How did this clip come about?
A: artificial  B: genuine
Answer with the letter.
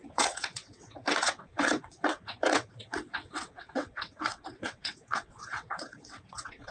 A